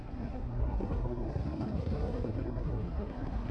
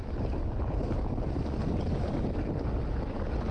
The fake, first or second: first